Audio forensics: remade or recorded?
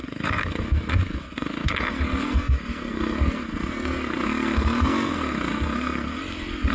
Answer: remade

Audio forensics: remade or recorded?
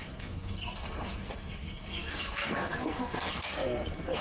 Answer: remade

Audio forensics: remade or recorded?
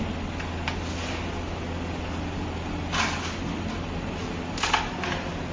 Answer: recorded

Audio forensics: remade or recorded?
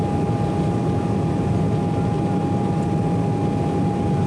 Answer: recorded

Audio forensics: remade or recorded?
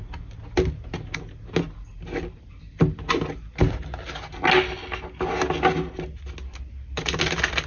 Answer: recorded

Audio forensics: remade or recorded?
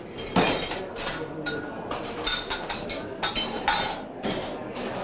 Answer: recorded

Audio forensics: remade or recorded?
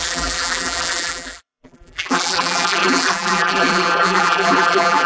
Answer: remade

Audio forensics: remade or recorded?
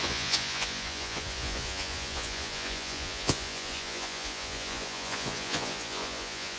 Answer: remade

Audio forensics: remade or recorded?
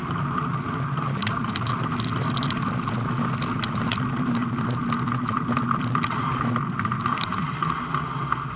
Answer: recorded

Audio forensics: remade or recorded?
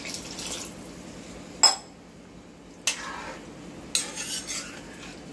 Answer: recorded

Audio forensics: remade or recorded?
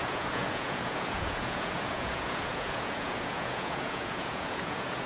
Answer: remade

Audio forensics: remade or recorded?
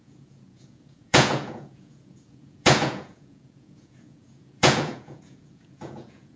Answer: remade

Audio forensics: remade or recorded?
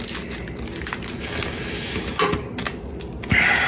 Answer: recorded